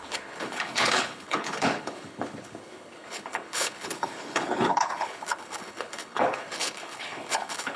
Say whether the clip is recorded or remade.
remade